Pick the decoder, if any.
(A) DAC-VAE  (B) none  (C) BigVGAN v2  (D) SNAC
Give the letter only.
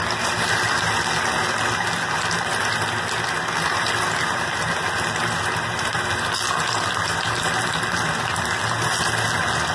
B